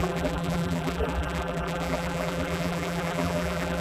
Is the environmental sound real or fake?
fake